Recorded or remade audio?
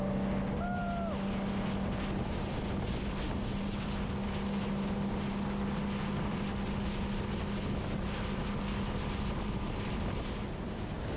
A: recorded